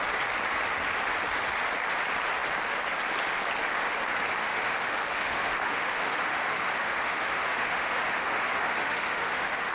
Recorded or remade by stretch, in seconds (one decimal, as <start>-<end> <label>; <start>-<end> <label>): 0.0-4.5 recorded; 4.5-9.7 remade